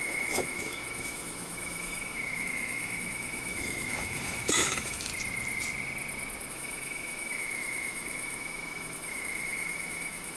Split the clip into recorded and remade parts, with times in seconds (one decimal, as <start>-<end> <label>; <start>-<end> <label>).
0.0-5.1 remade; 5.1-6.5 recorded; 6.5-10.4 remade